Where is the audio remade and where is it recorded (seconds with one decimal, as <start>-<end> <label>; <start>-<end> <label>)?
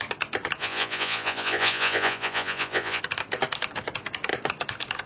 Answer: 0.0-0.6 recorded; 0.6-3.0 remade; 3.0-5.1 recorded